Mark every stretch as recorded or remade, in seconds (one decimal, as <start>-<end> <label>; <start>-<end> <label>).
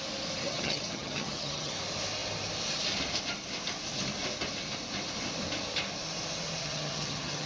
0.0-0.4 recorded; 0.4-1.7 remade; 1.7-6.6 recorded; 6.6-7.5 remade